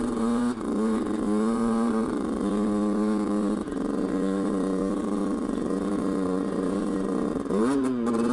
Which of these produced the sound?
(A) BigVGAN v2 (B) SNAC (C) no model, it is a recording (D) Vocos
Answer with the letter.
D